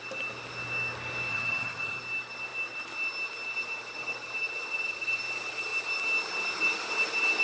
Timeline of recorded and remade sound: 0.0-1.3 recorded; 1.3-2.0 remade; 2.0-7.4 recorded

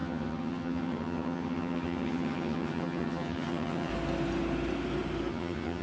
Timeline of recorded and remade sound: 0.0-3.9 remade; 3.9-5.3 recorded; 5.3-5.8 remade

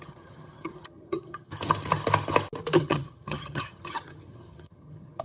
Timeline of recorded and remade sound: 0.0-1.5 remade; 1.5-2.8 recorded; 2.8-5.2 remade